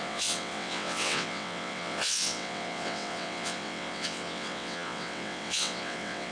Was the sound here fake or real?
fake